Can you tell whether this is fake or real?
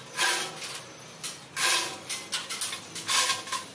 real